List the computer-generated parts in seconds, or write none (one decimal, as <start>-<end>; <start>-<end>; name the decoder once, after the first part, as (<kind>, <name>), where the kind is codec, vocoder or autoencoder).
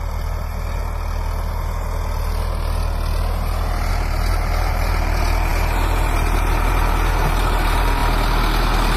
0.0-0.8 (vocoder, BigVGAN v2); 3.9-8.0